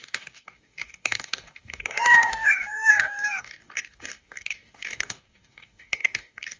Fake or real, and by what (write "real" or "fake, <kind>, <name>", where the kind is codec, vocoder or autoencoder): fake, codec, DAC